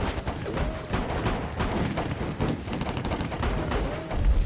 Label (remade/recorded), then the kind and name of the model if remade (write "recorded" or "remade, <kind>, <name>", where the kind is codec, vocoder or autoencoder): recorded